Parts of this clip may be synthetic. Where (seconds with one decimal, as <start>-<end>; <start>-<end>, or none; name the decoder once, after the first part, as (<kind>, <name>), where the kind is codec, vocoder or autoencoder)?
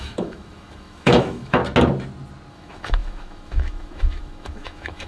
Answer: 0.0-1.6 (autoencoder, DAC-VAE); 2.5-5.1